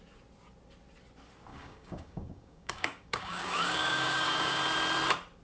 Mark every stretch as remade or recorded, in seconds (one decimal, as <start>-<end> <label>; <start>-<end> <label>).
0.0-1.5 recorded; 1.5-4.6 remade; 4.6-5.4 recorded